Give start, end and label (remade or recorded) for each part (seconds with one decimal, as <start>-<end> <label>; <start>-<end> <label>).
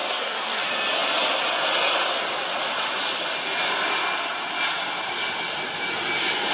0.0-0.6 remade; 0.6-6.5 recorded